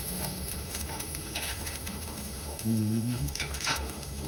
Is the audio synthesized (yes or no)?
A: yes